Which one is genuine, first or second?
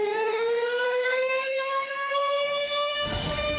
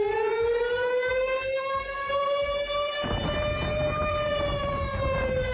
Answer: second